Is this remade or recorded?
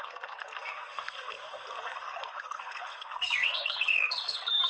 remade